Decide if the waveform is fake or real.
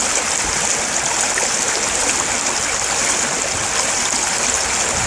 real